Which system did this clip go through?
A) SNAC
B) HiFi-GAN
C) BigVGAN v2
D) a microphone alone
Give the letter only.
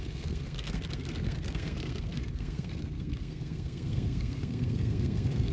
A